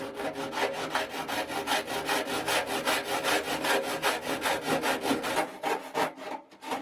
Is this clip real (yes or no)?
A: yes